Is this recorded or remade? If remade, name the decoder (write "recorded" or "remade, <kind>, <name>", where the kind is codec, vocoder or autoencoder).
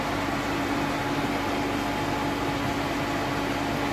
recorded